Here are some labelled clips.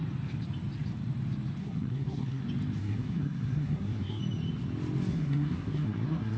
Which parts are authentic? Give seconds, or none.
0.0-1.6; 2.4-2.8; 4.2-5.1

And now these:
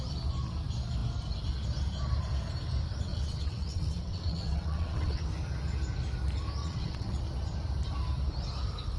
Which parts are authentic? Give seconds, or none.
0.0-3.1; 5.2-6.6; 7.2-9.0